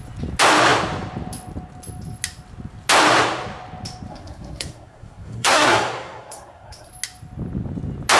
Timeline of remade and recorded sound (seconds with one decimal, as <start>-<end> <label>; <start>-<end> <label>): 0.0-4.1 recorded; 4.1-6.9 remade; 6.9-8.2 recorded